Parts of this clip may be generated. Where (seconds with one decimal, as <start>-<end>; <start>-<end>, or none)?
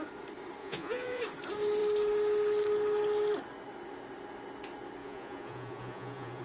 0.6-1.2; 5.0-6.4